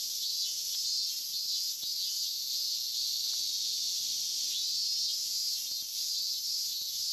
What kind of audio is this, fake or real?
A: real